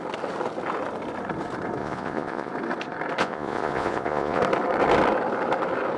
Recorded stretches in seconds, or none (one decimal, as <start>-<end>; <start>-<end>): 0.0-1.8; 2.5-3.2; 4.4-6.0